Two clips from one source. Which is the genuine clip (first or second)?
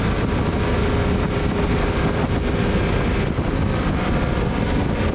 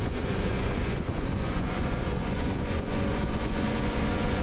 first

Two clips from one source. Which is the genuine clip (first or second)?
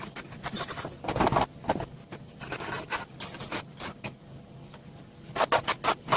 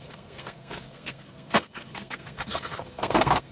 first